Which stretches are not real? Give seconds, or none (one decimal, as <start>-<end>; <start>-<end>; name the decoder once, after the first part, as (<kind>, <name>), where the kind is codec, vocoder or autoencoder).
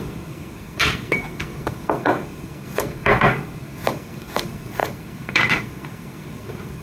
0.0-6.8 (codec, SNAC)